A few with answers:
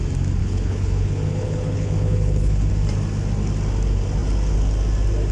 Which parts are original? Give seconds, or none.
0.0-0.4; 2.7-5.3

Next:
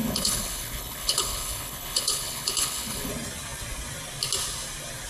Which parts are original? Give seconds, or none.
3.1-5.1

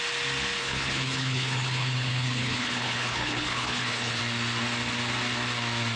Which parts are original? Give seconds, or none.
0.0-0.6; 4.2-6.0

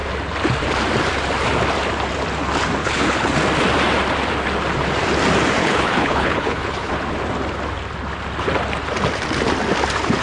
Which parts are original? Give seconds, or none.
0.0-2.8; 3.3-5.6; 6.9-10.2

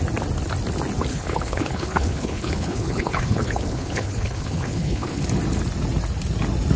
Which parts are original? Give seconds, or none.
0.0-1.1; 5.2-6.8

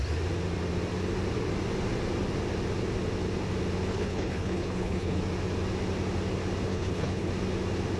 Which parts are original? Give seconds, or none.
0.0-3.9; 5.2-6.7; 7.3-8.0